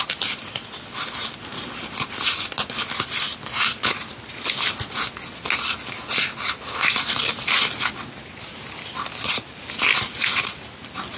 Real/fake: real